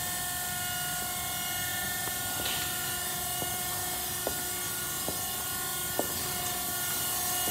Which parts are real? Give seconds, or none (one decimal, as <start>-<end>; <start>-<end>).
0.0-1.7; 3.7-5.7; 6.4-7.5